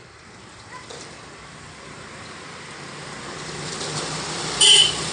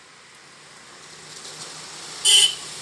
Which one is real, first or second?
second